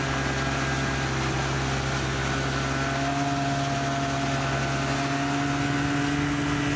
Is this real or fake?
real